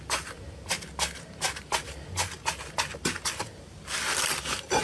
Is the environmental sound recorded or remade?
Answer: recorded